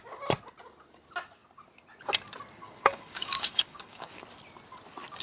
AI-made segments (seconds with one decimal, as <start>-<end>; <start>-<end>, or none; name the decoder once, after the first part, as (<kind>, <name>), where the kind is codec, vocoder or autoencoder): 2.6-4.1 (codec, DAC)